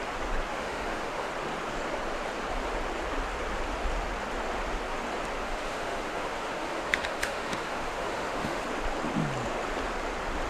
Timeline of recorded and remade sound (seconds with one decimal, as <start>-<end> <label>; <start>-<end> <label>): 0.0-0.5 recorded; 0.5-1.3 remade; 1.3-5.4 recorded; 5.4-8.6 remade; 8.6-10.5 recorded